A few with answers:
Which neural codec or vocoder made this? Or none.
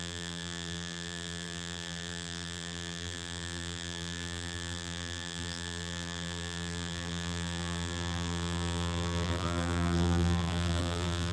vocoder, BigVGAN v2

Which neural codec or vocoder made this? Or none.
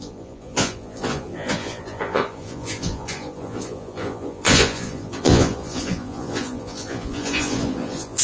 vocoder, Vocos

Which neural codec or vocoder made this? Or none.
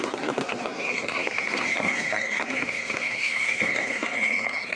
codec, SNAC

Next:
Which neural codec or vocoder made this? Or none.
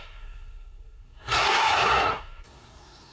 codec, SNAC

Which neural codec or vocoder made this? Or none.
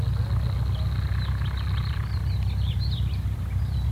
none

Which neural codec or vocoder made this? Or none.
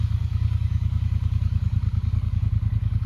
codec, DAC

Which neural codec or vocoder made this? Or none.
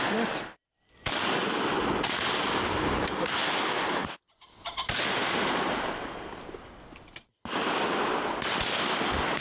none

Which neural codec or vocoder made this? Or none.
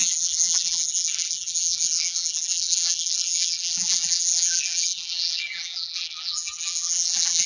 vocoder, BigVGAN v2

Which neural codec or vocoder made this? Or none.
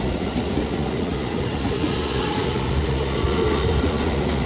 vocoder, Vocos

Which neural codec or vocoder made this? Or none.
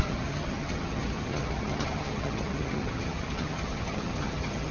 vocoder, HiFi-GAN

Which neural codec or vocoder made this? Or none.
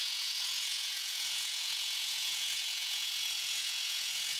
vocoder, Vocos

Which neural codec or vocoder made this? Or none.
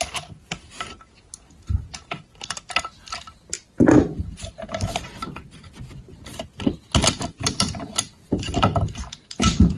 none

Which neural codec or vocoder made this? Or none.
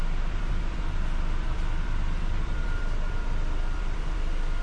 vocoder, BigVGAN v2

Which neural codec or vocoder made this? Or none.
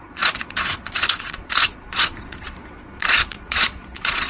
vocoder, Vocos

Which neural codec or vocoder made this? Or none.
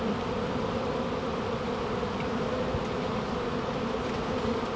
none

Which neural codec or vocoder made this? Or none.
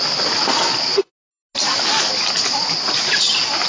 none